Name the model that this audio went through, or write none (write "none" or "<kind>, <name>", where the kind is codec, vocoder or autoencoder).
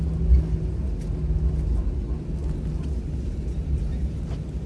none